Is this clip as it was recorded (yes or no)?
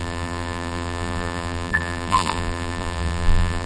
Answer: no